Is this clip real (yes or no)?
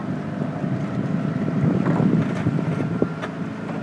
yes